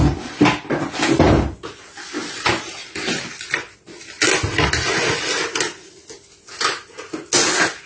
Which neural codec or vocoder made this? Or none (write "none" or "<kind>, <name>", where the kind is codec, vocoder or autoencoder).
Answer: none